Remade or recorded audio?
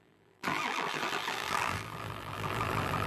remade